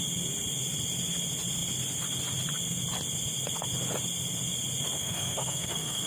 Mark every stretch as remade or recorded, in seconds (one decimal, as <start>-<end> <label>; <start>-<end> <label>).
0.0-5.0 recorded; 5.0-6.1 remade